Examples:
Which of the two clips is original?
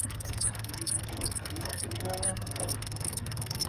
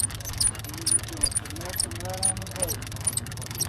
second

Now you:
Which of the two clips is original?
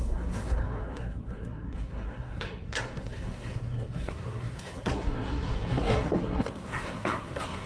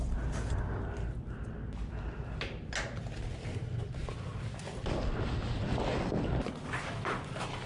second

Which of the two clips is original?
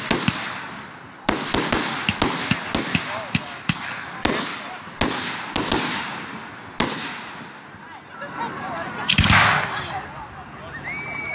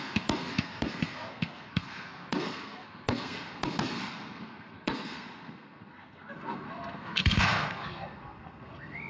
first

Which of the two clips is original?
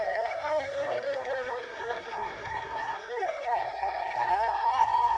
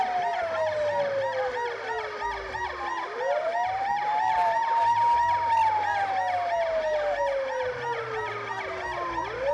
second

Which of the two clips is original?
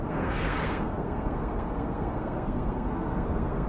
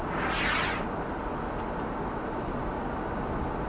second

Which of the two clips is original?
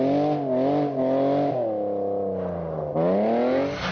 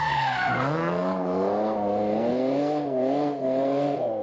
first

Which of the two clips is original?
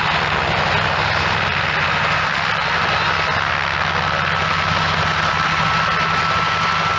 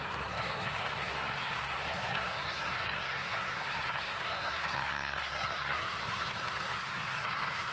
first